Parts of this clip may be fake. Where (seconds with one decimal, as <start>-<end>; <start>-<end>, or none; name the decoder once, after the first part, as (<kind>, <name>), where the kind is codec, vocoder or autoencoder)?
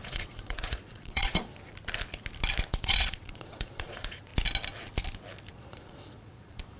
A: 0.0-1.5 (vocoder, Vocos); 2.7-4.3; 5.5-6.8